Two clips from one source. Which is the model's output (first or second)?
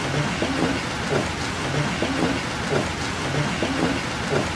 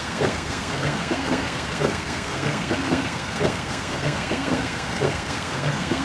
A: second